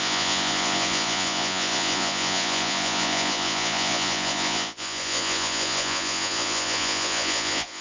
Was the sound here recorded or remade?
remade